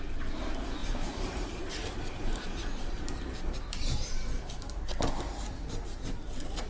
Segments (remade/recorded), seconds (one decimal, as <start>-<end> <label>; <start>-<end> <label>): 0.0-0.8 recorded; 0.8-1.6 remade; 1.6-2.2 recorded; 2.2-4.1 remade; 4.1-6.7 recorded